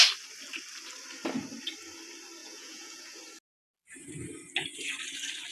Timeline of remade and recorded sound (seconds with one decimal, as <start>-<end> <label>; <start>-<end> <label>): 0.0-2.4 recorded; 2.4-3.2 remade; 3.2-5.5 recorded